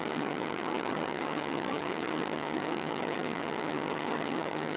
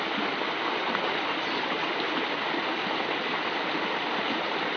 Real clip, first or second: second